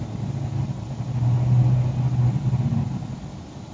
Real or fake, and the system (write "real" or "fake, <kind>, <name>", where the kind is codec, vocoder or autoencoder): real